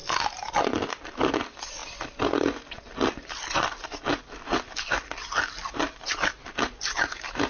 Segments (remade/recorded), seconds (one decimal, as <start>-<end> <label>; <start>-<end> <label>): 0.0-7.5 recorded